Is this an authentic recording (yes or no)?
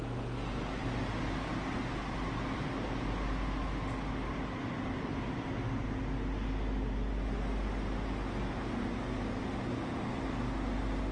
yes